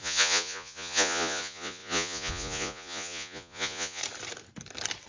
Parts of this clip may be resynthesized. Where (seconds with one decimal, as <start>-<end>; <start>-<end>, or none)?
0.0-4.0